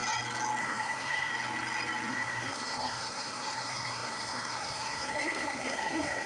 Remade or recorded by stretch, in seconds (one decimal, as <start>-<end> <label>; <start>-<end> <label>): 0.0-0.6 recorded; 0.6-1.3 remade; 1.3-2.1 recorded; 2.1-6.3 remade